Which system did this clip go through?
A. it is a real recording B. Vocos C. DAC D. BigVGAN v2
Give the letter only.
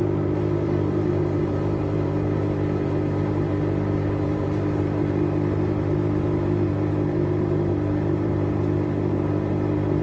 D